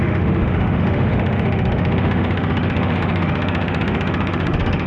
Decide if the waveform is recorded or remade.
remade